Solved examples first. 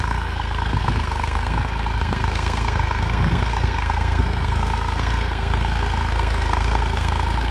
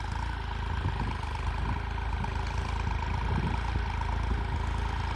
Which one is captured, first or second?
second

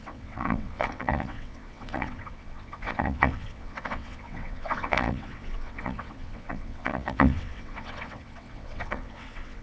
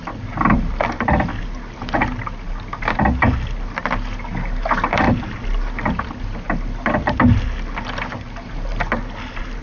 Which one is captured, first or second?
second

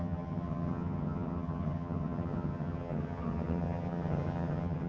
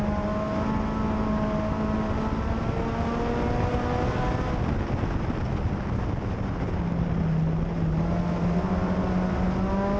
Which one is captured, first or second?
second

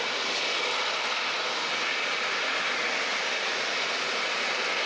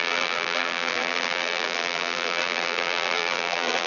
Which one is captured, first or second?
first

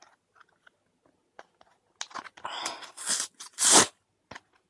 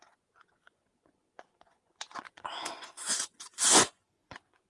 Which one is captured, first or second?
first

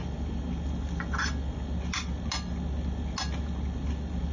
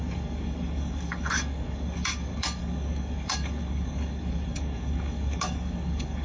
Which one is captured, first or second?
first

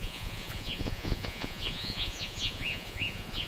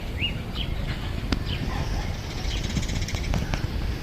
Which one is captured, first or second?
second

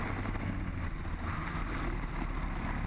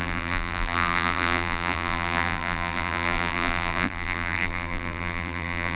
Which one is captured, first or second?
first